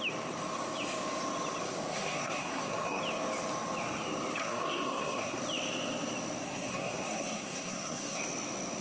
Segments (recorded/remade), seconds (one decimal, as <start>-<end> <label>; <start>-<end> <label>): 0.0-1.9 recorded; 1.9-3.0 remade; 3.0-4.4 recorded; 4.4-5.4 remade; 5.4-6.4 recorded; 6.4-8.2 remade; 8.2-8.8 recorded